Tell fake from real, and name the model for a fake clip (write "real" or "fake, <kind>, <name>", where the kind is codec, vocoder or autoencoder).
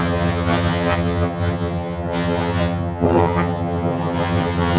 fake, vocoder, HiFi-GAN